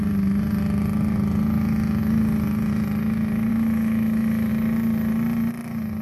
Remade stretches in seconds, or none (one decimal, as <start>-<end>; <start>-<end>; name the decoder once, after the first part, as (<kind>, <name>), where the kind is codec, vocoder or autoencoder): 3.5-4.5 (autoencoder, DAC-VAE)